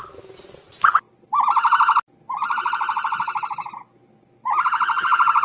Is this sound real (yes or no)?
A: yes